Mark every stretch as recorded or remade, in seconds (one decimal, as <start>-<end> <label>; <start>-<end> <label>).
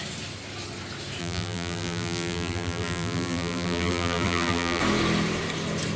0.0-1.2 recorded; 1.2-4.8 remade; 4.8-6.0 recorded